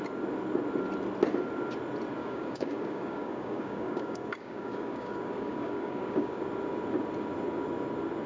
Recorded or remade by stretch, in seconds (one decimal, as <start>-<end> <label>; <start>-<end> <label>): 0.0-2.2 recorded; 2.2-6.4 remade; 6.4-8.3 recorded